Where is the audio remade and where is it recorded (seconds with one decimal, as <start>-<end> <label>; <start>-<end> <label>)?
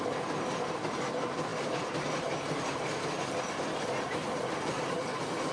0.0-5.5 recorded